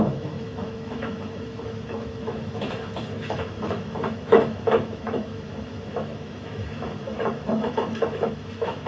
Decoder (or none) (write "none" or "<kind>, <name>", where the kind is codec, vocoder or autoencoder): autoencoder, DAC-VAE